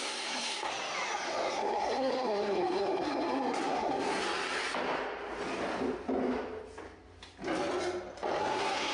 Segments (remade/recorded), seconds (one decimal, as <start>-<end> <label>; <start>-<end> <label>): 0.0-0.7 remade; 0.7-1.5 recorded; 1.5-4.2 remade; 4.2-8.4 recorded; 8.4-8.9 remade